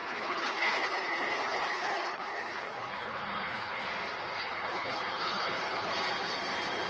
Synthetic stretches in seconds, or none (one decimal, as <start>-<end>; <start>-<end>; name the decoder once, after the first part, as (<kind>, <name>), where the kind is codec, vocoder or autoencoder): 0.0-3.8 (codec, HILCodec); 4.4-5.9